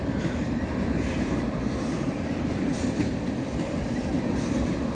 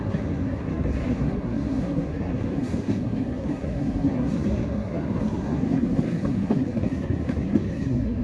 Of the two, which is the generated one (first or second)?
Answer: second